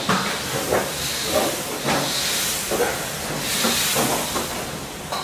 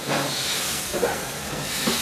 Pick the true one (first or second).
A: first